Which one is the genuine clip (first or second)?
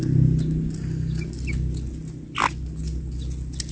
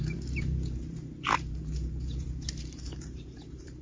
first